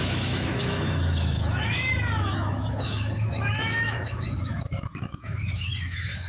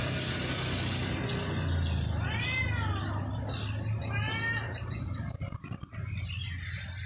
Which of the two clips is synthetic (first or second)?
first